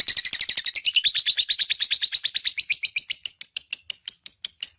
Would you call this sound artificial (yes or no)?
no